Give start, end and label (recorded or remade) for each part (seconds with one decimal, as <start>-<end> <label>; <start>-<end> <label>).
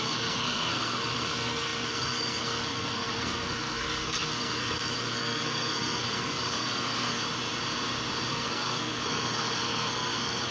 0.0-7.2 remade; 7.2-8.3 recorded; 8.3-10.5 remade